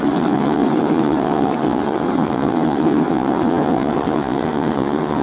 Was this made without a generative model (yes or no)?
no